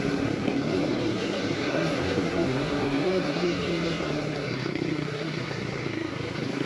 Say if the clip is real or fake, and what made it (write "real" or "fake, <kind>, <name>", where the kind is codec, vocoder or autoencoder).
fake, codec, SNAC